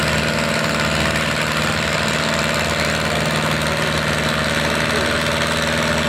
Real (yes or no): yes